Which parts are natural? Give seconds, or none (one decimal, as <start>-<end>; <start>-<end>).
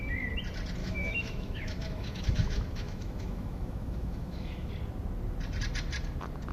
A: 0.0-0.8; 4.7-6.5